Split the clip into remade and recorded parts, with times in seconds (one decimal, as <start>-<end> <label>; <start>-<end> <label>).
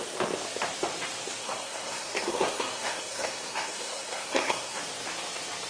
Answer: 0.0-1.4 recorded; 1.4-4.8 remade; 4.8-5.7 recorded